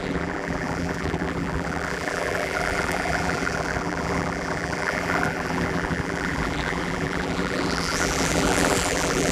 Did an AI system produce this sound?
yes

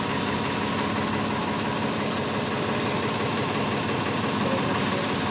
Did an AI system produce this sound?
no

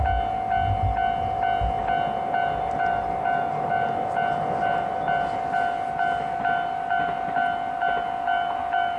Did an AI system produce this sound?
no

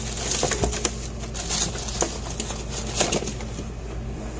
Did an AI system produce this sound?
no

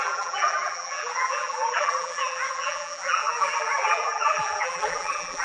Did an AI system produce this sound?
yes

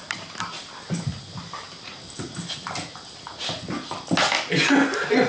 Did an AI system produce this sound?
no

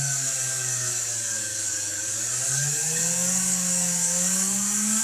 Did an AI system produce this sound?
yes